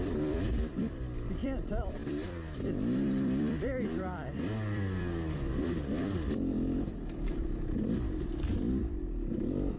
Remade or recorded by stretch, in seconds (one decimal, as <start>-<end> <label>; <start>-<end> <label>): 0.0-9.8 remade